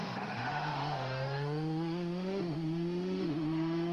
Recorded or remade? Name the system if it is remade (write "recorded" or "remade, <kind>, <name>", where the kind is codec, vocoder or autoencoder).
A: remade, autoencoder, DAC-VAE